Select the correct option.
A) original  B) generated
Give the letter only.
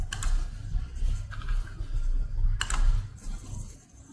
A